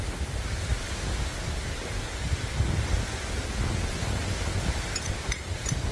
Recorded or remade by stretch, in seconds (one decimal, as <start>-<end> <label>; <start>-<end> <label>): 0.0-5.9 recorded